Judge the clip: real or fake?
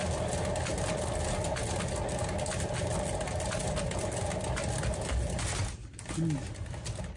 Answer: real